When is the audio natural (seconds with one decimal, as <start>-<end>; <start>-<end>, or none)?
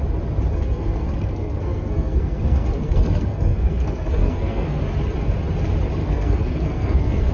0.0-0.5; 4.8-6.0